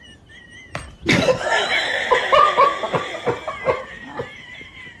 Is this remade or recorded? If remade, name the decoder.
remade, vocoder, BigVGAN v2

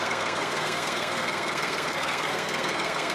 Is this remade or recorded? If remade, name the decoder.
remade, codec, SNAC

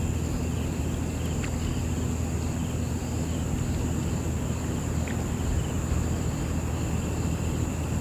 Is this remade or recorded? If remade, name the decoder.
recorded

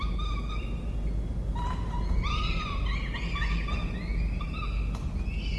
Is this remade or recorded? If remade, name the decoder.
recorded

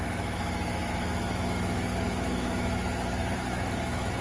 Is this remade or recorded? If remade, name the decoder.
remade, autoencoder, DAC-VAE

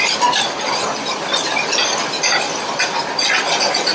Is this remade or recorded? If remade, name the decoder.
recorded